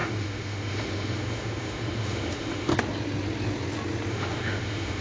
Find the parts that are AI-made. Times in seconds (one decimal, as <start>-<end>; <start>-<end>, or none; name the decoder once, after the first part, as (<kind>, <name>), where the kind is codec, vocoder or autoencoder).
0.0-2.7 (autoencoder, DAC-VAE); 4.1-5.0